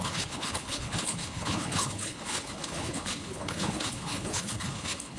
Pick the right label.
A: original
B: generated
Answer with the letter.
B